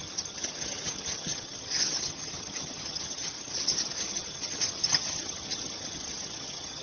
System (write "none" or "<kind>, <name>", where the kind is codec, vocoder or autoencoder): vocoder, HiFi-GAN